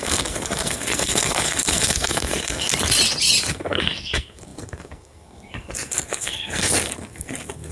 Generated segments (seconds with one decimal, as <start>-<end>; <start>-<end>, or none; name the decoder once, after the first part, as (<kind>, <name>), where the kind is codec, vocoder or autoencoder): 0.0-2.7 (codec, SNAC); 3.5-7.7